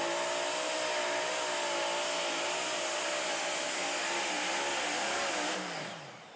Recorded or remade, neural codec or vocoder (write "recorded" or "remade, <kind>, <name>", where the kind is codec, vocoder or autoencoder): recorded